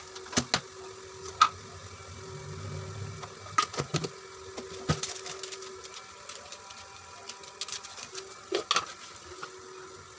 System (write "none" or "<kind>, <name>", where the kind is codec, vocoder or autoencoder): none